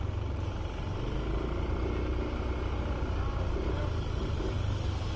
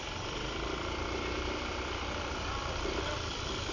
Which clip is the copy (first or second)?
second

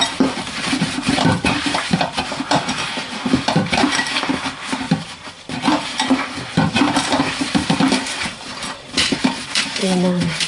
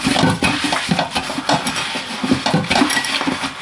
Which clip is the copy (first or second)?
first